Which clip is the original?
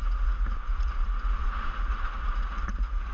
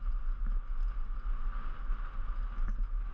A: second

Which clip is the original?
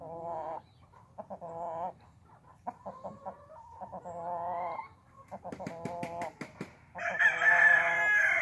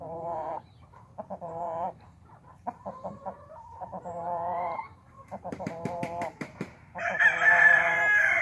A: first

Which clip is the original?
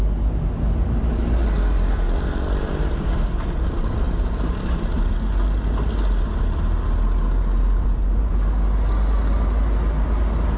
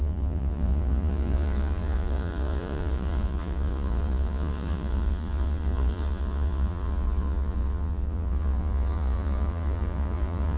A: first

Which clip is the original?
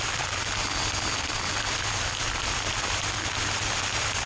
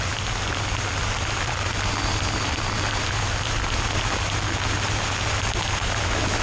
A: second